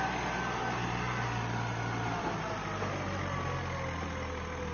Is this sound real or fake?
real